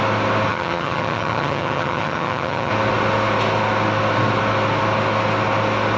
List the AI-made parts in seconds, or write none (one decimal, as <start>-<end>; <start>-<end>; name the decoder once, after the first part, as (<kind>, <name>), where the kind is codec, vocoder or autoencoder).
0.5-2.7 (vocoder, HiFi-GAN)